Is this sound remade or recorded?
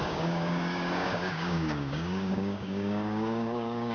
remade